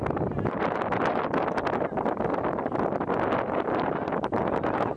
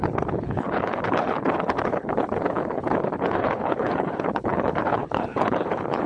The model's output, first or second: second